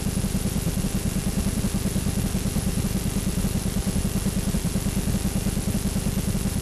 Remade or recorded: remade